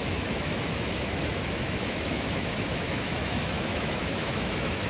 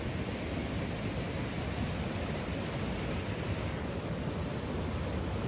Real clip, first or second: second